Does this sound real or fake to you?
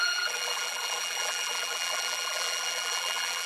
fake